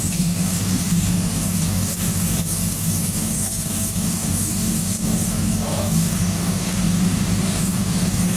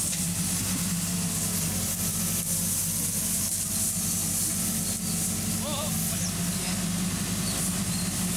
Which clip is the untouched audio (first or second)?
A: second